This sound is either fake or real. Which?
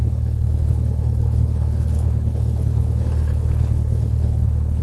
fake